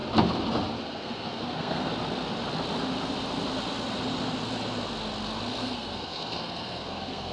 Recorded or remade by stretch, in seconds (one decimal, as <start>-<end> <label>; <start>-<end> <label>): 0.0-0.8 recorded; 0.8-1.9 remade; 1.9-5.6 recorded; 5.6-7.3 remade